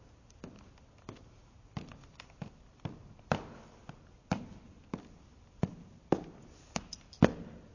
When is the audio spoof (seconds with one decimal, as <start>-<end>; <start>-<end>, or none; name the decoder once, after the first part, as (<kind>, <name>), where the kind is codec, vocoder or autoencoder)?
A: none